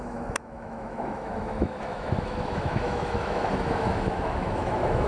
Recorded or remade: remade